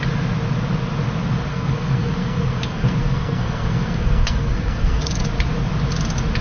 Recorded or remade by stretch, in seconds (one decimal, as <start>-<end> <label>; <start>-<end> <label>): 0.0-1.5 recorded; 1.5-5.3 remade; 5.3-6.4 recorded